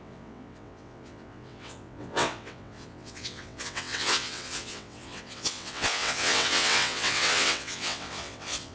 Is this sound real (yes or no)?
no